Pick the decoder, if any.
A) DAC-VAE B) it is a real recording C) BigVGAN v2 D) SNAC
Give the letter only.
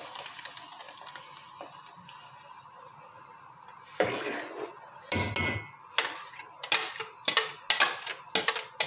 B